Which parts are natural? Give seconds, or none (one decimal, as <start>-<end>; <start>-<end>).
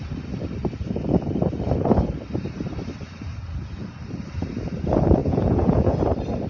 0.0-5.2; 6.0-6.5